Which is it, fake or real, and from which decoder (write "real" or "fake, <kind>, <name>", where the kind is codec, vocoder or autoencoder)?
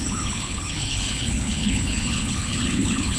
fake, codec, HILCodec